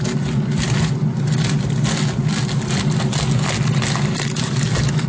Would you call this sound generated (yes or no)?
no